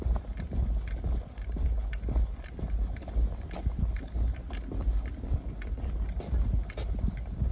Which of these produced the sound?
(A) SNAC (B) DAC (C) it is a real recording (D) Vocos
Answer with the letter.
C